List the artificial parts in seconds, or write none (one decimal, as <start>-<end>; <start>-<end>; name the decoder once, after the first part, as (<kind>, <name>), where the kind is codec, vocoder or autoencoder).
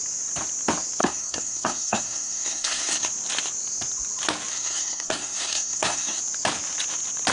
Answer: 1.0-3.1 (codec, SNAC); 4.5-6.2